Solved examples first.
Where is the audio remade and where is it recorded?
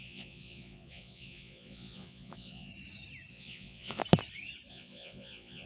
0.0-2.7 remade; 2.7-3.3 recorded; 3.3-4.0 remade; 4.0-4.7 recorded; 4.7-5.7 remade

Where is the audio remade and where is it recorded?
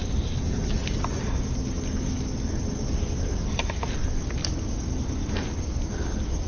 0.0-6.5 recorded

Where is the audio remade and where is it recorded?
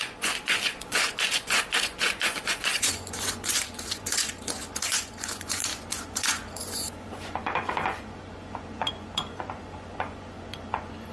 0.0-11.1 remade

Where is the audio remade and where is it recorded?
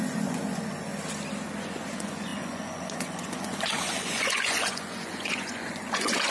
0.0-0.9 remade; 0.9-1.6 recorded; 1.6-6.3 remade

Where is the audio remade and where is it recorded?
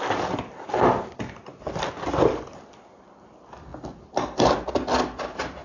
0.0-5.6 recorded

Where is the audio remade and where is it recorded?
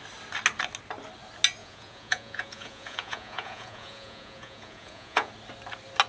0.0-1.6 recorded; 1.6-5.3 remade; 5.3-6.1 recorded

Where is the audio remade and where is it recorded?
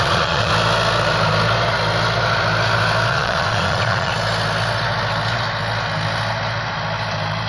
0.0-0.5 remade; 0.5-3.1 recorded; 3.1-4.1 remade; 4.1-7.5 recorded